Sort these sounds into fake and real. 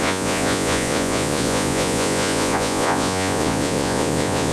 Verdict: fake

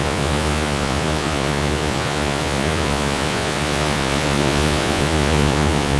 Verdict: fake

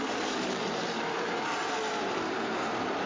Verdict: fake